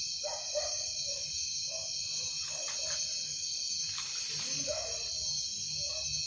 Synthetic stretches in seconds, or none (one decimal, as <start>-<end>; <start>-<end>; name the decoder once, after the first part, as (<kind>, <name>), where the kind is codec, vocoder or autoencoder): none